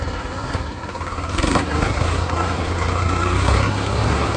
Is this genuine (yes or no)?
no